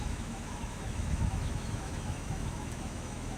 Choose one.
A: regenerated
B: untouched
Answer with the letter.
A